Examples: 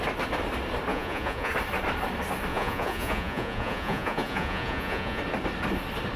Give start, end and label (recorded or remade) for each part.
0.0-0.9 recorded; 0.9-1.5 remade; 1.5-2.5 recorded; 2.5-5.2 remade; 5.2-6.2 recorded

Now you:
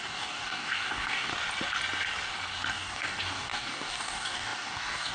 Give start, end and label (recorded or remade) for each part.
0.0-1.3 remade; 1.3-2.7 recorded; 2.7-5.1 remade

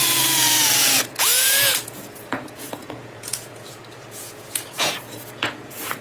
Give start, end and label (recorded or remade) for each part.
0.0-6.0 remade

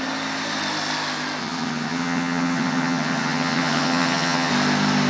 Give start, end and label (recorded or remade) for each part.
0.0-1.4 recorded; 1.4-4.5 remade; 4.5-5.1 recorded

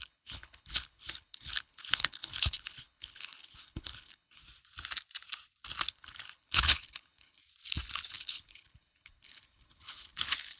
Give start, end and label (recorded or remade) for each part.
0.0-4.4 remade; 4.4-5.9 recorded; 5.9-7.4 remade; 7.4-8.1 recorded; 8.1-10.6 remade